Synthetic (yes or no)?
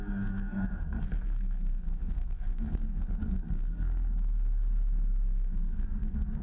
yes